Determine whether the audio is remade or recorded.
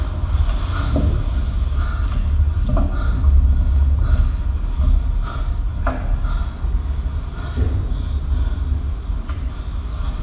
recorded